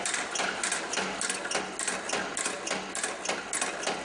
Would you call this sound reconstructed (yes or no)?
no